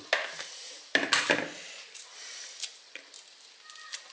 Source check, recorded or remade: recorded